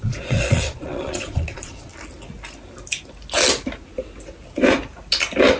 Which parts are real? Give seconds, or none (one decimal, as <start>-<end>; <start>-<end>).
1.9-5.6